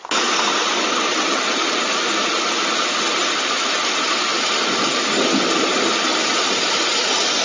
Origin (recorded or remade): recorded